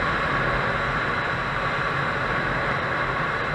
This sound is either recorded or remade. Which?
recorded